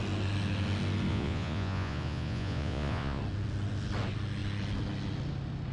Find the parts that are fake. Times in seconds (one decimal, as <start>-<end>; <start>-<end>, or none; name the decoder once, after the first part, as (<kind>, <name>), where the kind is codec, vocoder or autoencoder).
1.1-3.2 (vocoder, Vocos)